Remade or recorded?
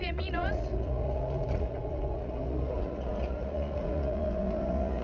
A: remade